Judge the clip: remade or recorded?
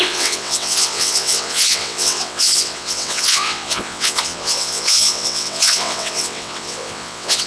remade